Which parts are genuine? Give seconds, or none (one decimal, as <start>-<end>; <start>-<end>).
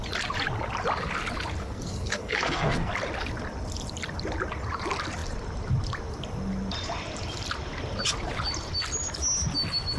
0.0-1.6; 2.9-10.0